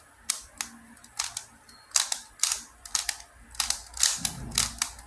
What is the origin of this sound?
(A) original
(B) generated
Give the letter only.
A